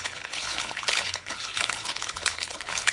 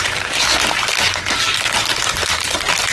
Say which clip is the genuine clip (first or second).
second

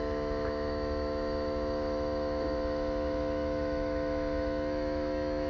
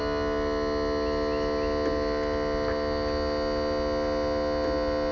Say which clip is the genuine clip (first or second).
second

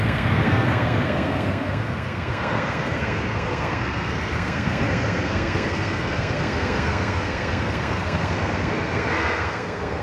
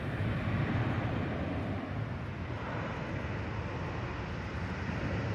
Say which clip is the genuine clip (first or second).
second